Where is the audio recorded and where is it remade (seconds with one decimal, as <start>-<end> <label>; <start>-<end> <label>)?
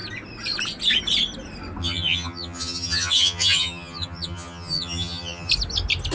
0.0-1.8 recorded; 1.8-5.5 remade; 5.5-6.1 recorded